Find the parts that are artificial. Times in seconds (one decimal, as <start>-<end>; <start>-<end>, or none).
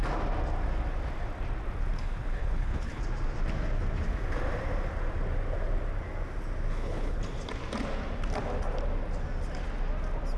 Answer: 2.0-3.0; 6.7-7.2